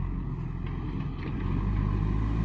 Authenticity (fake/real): real